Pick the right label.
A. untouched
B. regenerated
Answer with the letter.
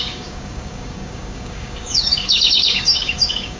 B